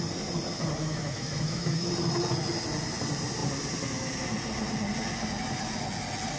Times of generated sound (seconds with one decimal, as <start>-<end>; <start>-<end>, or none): 0.8-1.9